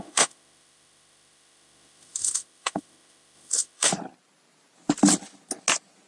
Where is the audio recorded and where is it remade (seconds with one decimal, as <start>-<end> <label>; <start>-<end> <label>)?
0.0-3.9 remade; 3.9-6.1 recorded